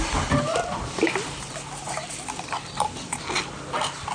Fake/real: real